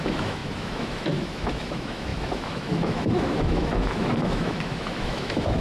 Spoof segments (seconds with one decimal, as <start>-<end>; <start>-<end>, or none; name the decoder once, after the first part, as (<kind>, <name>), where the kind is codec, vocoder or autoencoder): 0.0-5.6 (autoencoder, DAC-VAE)

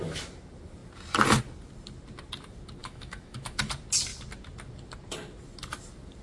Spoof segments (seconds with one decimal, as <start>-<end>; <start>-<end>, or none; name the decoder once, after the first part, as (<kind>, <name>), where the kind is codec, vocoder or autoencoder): 2.8-3.6 (autoencoder, DAC-VAE)